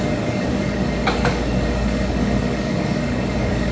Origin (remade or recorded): remade